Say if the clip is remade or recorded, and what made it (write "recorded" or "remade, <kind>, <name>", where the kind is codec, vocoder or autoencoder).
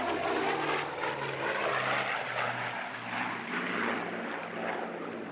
recorded